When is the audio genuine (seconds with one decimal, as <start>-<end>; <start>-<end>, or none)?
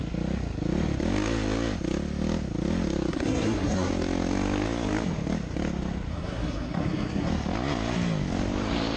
0.0-3.1; 3.9-6.1; 7.3-9.0